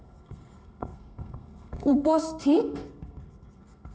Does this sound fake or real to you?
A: fake